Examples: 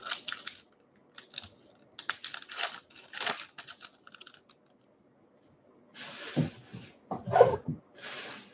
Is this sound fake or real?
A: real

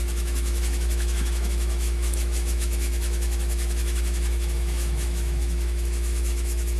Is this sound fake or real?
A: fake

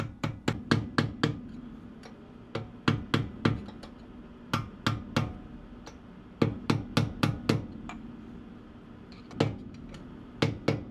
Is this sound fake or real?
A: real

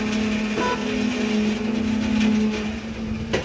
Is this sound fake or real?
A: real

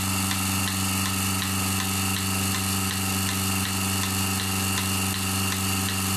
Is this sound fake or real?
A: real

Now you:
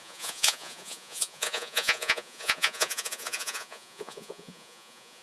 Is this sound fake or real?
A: fake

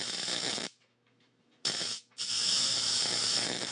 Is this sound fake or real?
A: fake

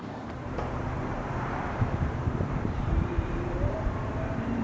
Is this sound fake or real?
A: fake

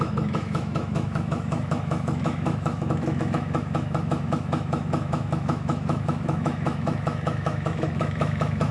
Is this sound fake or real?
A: fake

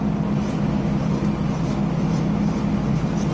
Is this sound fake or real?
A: real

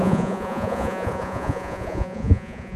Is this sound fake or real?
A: fake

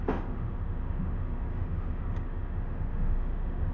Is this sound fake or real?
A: fake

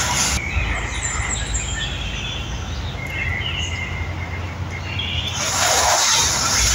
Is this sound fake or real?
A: real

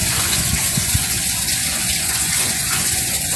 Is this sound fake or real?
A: fake